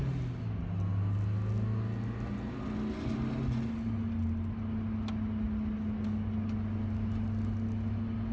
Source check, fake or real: real